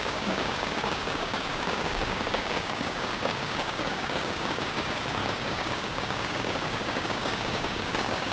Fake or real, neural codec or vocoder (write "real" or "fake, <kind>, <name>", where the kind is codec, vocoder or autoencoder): fake, codec, DAC